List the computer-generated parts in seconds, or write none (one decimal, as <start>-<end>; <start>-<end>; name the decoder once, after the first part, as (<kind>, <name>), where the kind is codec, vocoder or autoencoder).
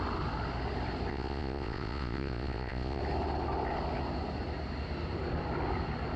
1.1-3.0 (vocoder, Vocos)